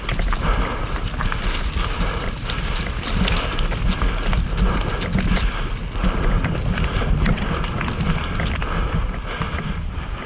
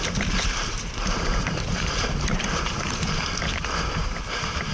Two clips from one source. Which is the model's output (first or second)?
second